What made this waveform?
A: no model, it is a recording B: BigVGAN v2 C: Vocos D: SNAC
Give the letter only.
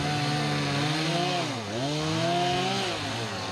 A